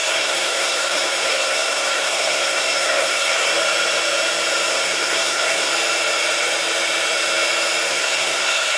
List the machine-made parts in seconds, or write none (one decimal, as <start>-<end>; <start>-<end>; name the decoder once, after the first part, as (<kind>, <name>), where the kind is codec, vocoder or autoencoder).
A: 0.0-3.5 (codec, SNAC); 4.7-5.7; 7.9-8.8